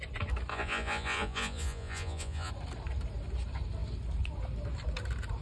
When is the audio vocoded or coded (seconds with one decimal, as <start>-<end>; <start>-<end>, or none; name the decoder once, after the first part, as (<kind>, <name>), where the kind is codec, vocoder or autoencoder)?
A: 0.5-2.5 (vocoder, Vocos)